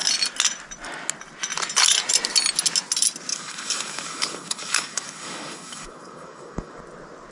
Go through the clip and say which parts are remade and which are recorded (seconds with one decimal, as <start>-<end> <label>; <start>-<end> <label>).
0.0-3.3 recorded; 3.3-6.8 remade; 6.8-7.3 recorded